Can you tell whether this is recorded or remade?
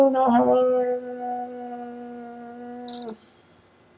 recorded